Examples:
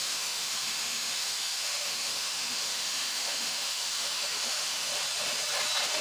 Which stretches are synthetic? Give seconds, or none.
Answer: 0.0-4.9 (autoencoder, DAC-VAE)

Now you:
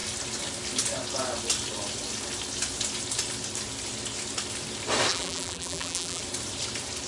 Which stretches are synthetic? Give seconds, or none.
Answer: 5.1-6.2 (vocoder, BigVGAN v2)

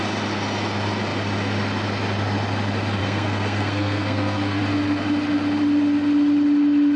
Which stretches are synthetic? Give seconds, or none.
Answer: 3.0-4.6 (codec, SNAC)

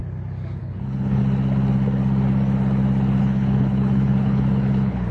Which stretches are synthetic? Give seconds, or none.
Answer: 0.6-1.2 (codec, HILCodec); 3.2-5.1

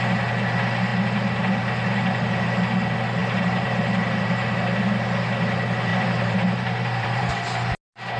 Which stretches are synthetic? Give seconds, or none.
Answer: 3.2-4.3 (vocoder, BigVGAN v2); 5.9-7.3

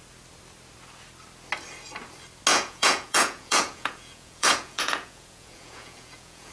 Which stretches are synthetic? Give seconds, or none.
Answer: 2.5-6.5 (vocoder, Vocos)

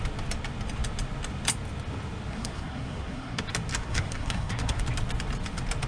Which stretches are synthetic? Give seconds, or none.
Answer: 2.3-3.4 (codec, SNAC); 3.8-4.8